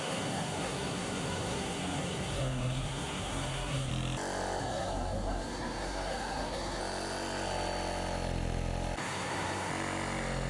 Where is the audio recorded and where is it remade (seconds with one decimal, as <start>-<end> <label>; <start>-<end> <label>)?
0.0-3.9 remade; 3.9-4.6 recorded; 4.6-6.8 remade; 6.8-9.0 recorded; 9.0-9.7 remade; 9.7-10.5 recorded